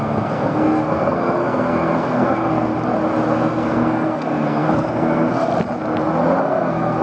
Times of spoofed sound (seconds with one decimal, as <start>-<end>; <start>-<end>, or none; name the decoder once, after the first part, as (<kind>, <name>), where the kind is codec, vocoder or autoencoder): 0.0-2.7 (codec, SNAC); 3.3-5.5; 6.4-7.0